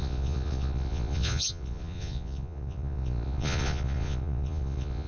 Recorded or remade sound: remade